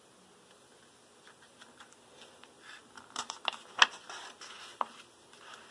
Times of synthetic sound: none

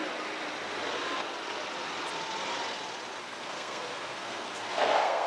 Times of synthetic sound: 3.2-5.3 (codec, SNAC)